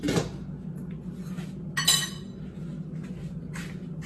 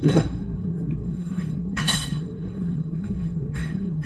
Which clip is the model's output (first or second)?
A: second